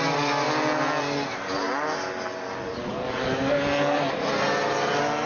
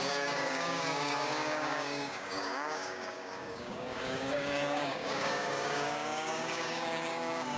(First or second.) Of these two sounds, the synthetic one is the second